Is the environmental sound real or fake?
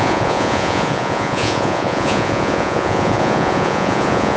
fake